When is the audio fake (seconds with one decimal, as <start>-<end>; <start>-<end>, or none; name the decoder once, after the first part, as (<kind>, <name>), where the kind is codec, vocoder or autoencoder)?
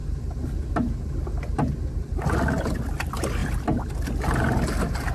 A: none